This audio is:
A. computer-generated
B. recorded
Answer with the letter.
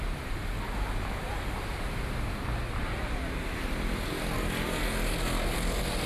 B